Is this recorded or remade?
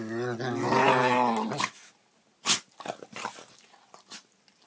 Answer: recorded